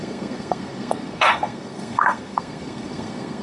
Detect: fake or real fake